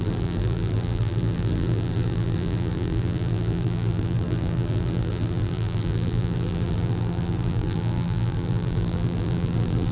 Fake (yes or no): yes